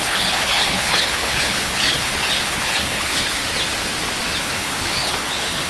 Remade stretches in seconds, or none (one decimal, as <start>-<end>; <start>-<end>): 0.0-3.4; 4.4-5.7